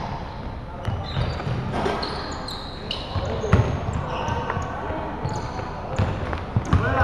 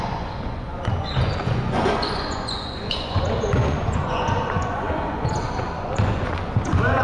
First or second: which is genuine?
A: first